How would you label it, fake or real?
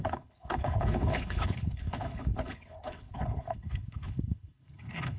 fake